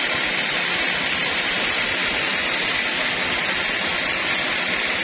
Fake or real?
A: real